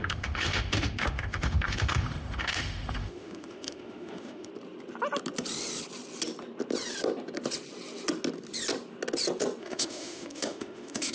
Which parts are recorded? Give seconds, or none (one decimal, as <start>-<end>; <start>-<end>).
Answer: 4.5-9.6